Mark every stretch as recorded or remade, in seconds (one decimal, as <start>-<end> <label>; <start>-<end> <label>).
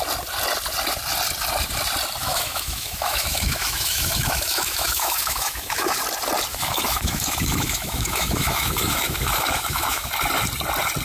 0.0-2.2 recorded; 2.2-6.0 remade; 6.0-6.5 recorded; 6.5-10.1 remade; 10.1-11.0 recorded